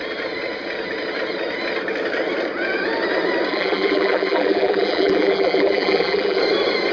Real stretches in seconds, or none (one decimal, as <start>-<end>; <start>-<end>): 0.0-3.5; 6.4-6.9